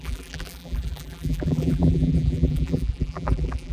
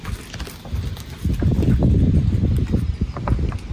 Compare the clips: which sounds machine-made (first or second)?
first